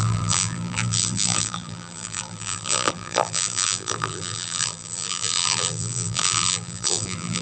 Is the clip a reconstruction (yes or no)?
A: yes